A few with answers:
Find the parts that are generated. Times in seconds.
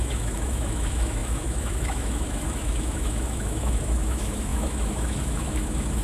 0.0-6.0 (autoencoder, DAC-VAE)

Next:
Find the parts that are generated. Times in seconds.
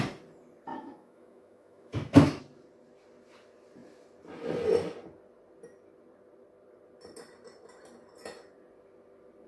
0.7-2.4 (autoencoder, DAC-VAE)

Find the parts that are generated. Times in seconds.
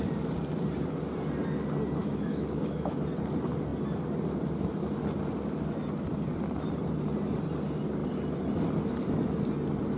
2.0-3.0 (autoencoder, DAC-VAE)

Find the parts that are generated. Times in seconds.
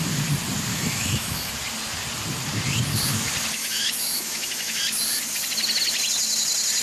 0.7-1.5 (autoencoder, DAC-VAE); 3.6-4.8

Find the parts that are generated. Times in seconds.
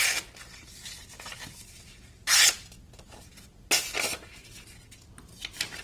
none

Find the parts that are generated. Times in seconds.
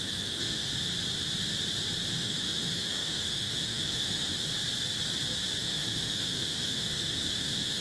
0.0-0.7 (autoencoder, DAC-VAE); 2.1-4.5; 5.6-7.8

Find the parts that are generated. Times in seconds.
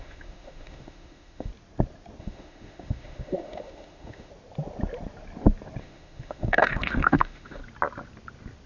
0.0-1.5 (autoencoder, DAC-VAE); 2.2-4.3; 5.8-7.6